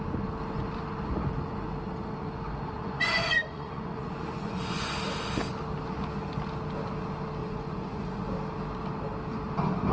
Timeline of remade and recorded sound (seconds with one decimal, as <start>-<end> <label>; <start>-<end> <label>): 0.0-2.2 recorded; 2.2-4.9 remade; 4.9-7.4 recorded; 7.4-8.3 remade; 8.3-9.9 recorded

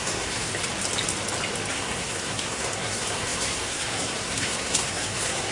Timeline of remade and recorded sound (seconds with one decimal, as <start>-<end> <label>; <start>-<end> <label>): 0.0-0.5 remade; 0.5-1.7 recorded; 1.7-5.5 remade

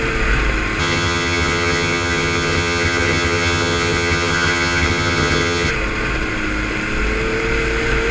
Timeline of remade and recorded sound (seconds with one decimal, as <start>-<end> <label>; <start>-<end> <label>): 0.0-0.8 recorded; 0.8-5.7 remade; 5.7-8.1 recorded

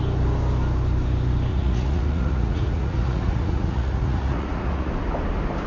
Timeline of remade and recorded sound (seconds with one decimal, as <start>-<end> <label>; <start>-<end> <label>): 0.0-1.5 recorded; 1.5-4.9 remade; 4.9-5.7 recorded

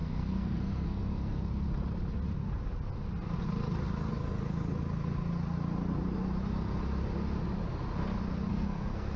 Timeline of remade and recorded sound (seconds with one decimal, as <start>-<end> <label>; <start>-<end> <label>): 0.0-1.4 remade; 1.4-8.5 recorded; 8.5-9.2 remade

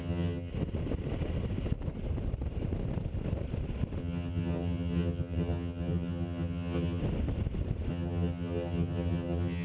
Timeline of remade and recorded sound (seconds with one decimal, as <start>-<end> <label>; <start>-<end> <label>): 0.0-0.5 remade; 0.5-4.0 recorded; 4.0-7.0 remade; 7.0-7.9 recorded; 7.9-9.6 remade

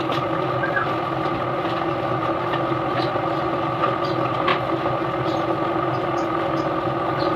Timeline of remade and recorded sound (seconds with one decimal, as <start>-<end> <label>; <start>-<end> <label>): 0.0-7.4 recorded